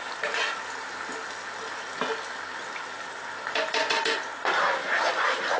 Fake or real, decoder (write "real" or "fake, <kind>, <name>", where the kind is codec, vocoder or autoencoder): real